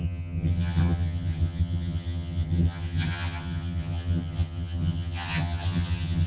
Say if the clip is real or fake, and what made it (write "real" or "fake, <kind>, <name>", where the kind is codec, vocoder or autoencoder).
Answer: fake, vocoder, HiFi-GAN